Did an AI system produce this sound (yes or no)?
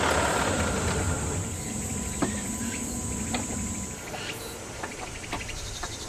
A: yes